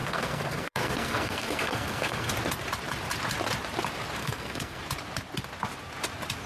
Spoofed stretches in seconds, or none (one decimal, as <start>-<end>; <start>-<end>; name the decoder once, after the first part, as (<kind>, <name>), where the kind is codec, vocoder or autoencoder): 0.0-2.3 (codec, SNAC); 4.2-4.8